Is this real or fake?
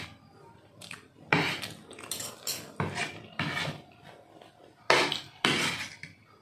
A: real